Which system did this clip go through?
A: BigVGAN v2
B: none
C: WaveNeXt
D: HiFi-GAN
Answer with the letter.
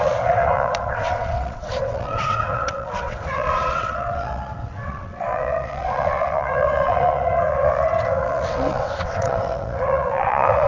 C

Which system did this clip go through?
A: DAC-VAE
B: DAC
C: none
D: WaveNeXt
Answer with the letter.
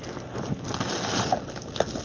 C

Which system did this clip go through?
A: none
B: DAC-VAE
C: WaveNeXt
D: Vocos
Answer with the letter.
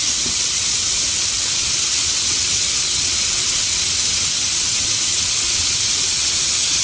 C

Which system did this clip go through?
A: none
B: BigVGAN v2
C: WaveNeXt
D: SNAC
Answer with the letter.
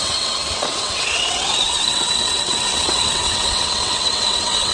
C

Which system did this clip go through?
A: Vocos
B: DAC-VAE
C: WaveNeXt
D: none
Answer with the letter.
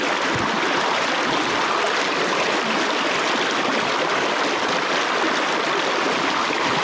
D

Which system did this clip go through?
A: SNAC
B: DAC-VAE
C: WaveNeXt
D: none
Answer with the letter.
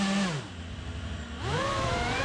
D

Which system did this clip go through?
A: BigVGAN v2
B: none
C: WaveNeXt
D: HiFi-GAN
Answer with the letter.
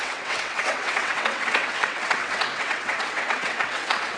C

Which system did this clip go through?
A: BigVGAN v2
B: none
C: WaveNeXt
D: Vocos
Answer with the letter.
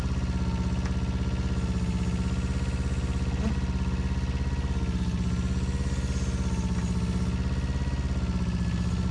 B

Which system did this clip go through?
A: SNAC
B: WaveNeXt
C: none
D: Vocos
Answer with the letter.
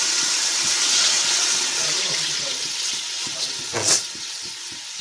B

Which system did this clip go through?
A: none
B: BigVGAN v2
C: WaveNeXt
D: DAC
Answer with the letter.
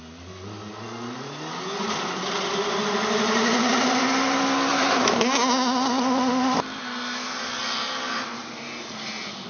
A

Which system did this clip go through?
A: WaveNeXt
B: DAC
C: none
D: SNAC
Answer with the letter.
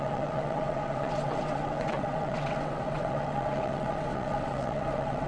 A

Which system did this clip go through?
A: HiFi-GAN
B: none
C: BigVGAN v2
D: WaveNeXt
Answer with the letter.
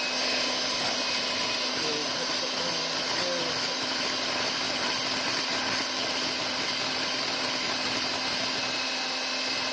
B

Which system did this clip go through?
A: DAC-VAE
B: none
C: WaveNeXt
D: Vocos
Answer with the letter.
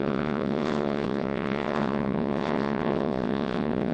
C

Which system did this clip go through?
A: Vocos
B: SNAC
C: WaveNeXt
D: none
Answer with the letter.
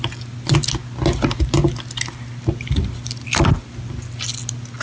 D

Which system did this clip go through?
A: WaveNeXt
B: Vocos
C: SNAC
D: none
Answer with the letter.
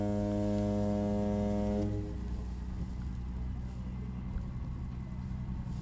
D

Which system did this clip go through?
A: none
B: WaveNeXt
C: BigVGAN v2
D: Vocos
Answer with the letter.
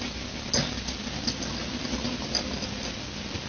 A